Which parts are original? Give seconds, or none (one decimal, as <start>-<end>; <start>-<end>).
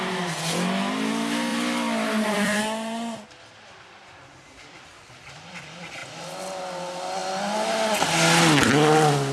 0.0-1.5; 2.6-9.3